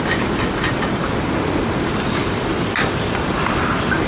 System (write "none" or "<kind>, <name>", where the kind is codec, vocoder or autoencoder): vocoder, BigVGAN v2